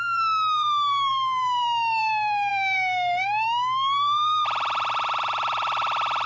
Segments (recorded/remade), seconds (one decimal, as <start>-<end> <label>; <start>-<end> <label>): 0.0-6.3 remade